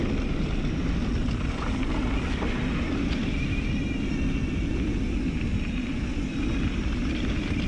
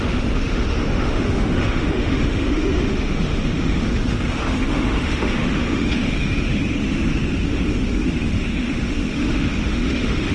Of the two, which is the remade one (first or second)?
second